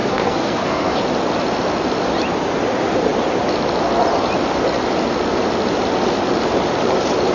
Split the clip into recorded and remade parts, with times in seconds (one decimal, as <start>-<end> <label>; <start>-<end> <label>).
0.0-1.0 remade; 1.0-7.3 recorded